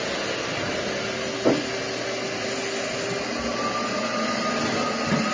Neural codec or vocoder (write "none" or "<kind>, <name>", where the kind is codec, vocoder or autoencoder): none